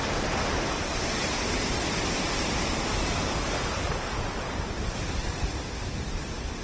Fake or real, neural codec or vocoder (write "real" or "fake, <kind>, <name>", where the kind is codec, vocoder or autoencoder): real